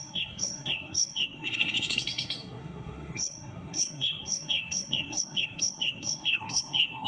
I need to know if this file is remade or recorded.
remade